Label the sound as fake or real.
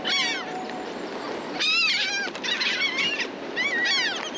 real